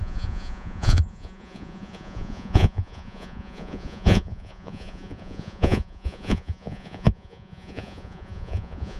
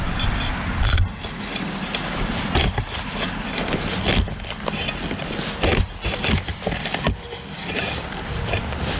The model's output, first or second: first